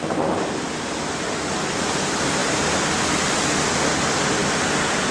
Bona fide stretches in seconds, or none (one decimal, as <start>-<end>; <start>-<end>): 0.0-5.1